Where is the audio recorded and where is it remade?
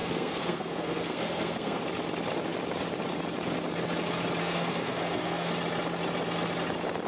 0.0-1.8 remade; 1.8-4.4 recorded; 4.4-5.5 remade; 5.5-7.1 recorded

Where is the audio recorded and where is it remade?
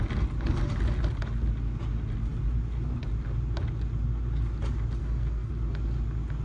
0.0-5.0 recorded; 5.0-5.5 remade; 5.5-6.4 recorded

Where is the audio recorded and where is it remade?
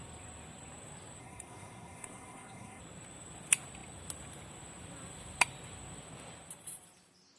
0.0-1.2 recorded; 1.2-2.8 remade; 2.8-7.4 recorded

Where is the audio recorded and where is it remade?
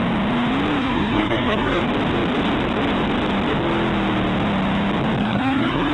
0.0-0.8 recorded; 0.8-1.8 remade; 1.8-5.2 recorded; 5.2-5.9 remade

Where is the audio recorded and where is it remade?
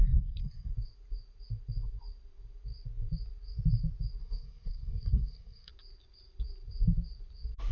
0.0-0.7 remade; 0.7-4.2 recorded; 4.2-5.7 remade; 5.7-7.7 recorded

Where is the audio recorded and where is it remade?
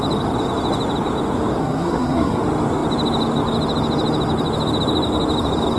0.0-1.6 recorded; 1.6-2.4 remade; 2.4-5.8 recorded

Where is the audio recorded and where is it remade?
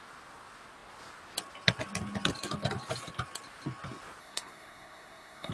0.0-4.2 recorded; 4.2-5.5 remade